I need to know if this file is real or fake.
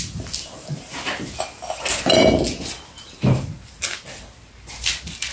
real